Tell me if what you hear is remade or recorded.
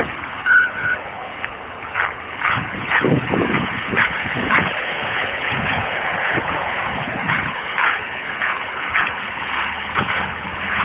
remade